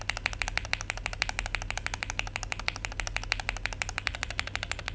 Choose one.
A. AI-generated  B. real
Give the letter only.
B